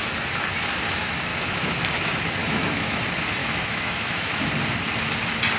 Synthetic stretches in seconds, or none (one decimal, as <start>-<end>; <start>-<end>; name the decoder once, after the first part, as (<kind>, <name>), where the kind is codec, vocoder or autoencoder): 1.3-1.8 (autoencoder, DAC-VAE); 2.4-3.0; 3.4-4.4